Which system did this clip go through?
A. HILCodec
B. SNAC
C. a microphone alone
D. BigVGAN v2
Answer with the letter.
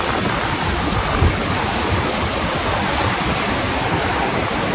C